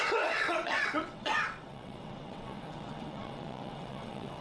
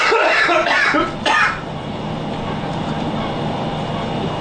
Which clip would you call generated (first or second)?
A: first